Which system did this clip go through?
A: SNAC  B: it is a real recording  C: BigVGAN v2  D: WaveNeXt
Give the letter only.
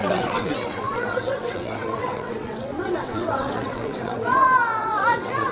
D